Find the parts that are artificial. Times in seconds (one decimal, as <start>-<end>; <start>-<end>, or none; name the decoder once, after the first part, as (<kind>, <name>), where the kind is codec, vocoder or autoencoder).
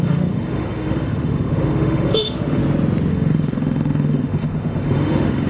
0.0-2.6 (autoencoder, DAC-VAE); 3.1-5.5